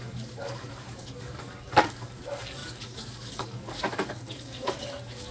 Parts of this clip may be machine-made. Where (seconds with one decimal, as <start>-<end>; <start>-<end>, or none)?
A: 0.0-5.3